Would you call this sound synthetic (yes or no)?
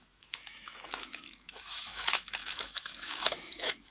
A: yes